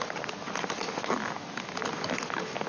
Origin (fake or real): real